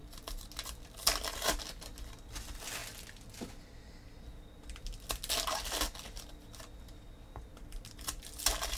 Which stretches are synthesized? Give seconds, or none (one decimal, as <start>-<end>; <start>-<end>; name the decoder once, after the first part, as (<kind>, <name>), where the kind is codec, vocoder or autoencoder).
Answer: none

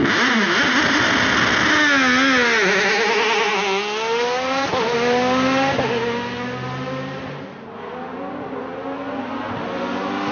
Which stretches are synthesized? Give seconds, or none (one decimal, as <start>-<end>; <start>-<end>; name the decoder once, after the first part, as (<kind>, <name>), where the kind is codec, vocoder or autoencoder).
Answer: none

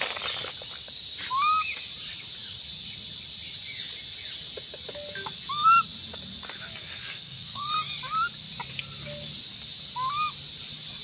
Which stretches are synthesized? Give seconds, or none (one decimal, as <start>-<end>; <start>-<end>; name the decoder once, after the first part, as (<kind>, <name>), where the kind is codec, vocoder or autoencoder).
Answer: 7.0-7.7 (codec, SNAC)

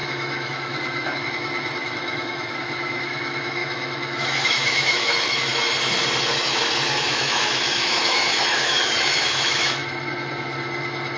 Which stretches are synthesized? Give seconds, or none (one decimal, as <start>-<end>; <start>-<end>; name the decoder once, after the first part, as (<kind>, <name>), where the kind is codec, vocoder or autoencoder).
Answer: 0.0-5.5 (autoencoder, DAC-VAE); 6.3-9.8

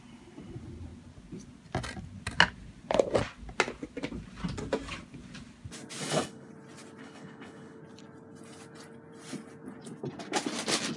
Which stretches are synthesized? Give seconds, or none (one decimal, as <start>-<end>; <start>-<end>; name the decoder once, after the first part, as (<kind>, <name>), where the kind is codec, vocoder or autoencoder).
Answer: 6.0-6.5 (codec, HILCodec); 7.0-7.8